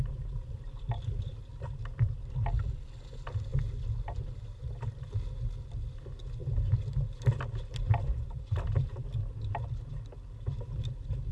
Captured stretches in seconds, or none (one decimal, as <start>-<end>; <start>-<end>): 0.0-11.3